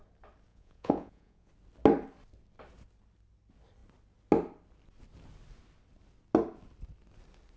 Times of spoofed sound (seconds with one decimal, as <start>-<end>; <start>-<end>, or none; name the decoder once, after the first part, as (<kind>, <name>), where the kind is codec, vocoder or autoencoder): 0.5-1.5 (vocoder, Vocos)